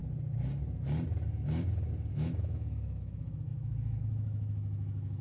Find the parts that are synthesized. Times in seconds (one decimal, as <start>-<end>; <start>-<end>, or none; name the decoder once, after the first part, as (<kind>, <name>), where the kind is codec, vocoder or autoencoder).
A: 2.1-5.2 (autoencoder, DAC-VAE)